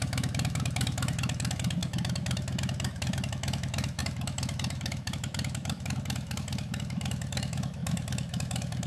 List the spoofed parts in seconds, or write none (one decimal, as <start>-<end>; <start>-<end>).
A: 0.0-8.9